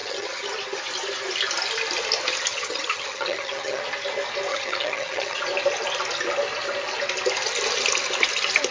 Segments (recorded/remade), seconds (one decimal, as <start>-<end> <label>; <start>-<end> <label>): 0.0-0.5 remade; 0.5-2.5 recorded; 2.5-3.8 remade; 3.8-4.5 recorded; 4.5-5.4 remade; 5.4-8.7 recorded